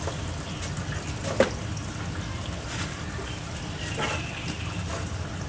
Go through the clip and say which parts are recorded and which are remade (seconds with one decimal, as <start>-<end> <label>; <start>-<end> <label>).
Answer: 0.0-5.5 recorded